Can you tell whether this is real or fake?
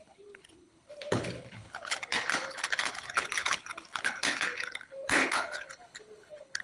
fake